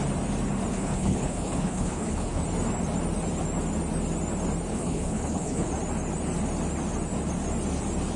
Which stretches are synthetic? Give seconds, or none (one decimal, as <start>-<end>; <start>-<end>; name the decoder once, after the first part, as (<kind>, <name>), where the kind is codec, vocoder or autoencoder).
0.7-2.4 (codec, HILCodec); 4.7-5.7